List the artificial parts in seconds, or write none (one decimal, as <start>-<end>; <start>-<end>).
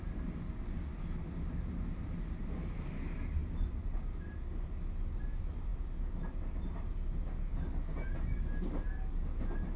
none